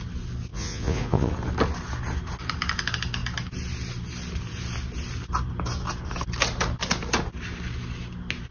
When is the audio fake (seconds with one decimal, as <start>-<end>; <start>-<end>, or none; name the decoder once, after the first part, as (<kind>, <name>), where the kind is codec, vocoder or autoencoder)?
0.5-1.3 (vocoder, Vocos)